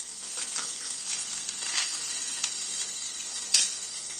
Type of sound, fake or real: fake